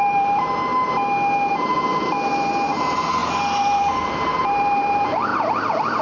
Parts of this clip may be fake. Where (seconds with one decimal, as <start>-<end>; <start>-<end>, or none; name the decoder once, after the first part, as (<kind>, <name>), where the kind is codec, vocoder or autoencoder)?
0.0-0.7 (vocoder, BigVGAN v2); 1.5-5.3